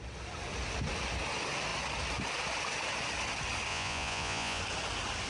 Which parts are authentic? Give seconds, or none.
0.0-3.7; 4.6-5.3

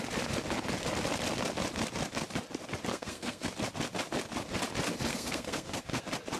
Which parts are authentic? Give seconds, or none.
0.0-2.9; 3.5-5.1; 6.0-6.4

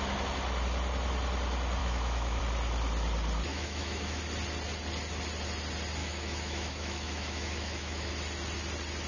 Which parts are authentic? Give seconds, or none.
0.0-1.8; 2.4-3.5; 4.2-6.0; 8.1-9.1